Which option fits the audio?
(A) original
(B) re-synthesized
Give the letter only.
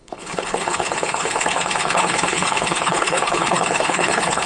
B